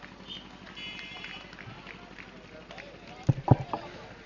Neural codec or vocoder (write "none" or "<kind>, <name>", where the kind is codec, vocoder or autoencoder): none